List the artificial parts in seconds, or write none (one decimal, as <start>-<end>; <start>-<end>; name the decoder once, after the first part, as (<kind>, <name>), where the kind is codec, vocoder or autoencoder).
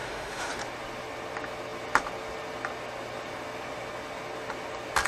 0.0-0.5 (autoencoder, DAC-VAE)